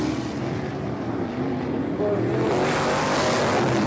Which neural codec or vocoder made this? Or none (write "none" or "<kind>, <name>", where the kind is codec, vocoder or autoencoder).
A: none